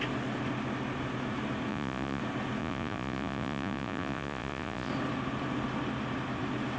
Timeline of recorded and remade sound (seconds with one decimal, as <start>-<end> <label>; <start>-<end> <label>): 0.0-1.7 recorded; 1.7-2.2 remade; 2.2-2.6 recorded; 2.6-4.9 remade; 4.9-6.8 recorded